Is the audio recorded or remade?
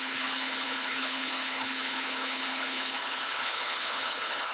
remade